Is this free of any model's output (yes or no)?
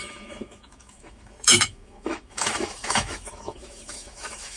no